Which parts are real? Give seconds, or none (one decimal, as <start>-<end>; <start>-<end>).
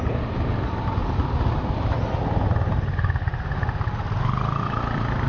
0.0-5.3